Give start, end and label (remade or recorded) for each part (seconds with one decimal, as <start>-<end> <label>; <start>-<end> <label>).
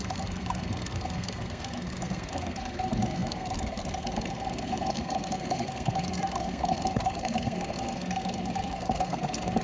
0.0-9.6 remade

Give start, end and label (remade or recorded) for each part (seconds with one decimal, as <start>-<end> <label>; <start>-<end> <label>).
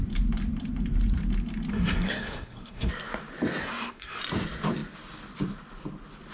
0.0-1.7 recorded; 1.7-2.9 remade; 2.9-3.6 recorded; 3.6-4.2 remade; 4.2-6.3 recorded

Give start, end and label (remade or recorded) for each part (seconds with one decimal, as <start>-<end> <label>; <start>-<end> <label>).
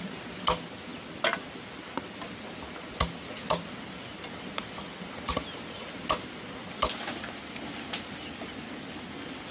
0.0-9.5 recorded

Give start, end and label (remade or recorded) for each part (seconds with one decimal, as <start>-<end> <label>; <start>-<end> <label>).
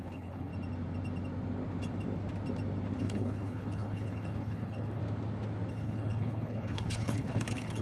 0.0-0.5 remade; 0.5-3.0 recorded; 3.0-5.0 remade; 5.0-5.7 recorded; 5.7-7.8 remade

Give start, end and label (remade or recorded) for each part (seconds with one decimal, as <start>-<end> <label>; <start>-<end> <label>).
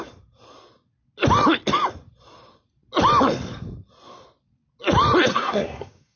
0.0-5.3 recorded; 5.3-6.2 remade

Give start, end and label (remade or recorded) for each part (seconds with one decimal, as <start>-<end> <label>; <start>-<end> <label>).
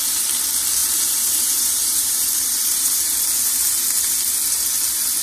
0.0-0.8 recorded; 0.8-3.9 remade; 3.9-5.2 recorded